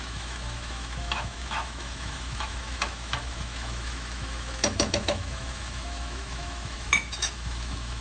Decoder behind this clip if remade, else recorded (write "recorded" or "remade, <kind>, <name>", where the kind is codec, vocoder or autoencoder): remade, autoencoder, DAC-VAE